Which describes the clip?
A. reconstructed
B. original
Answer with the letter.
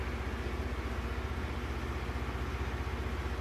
B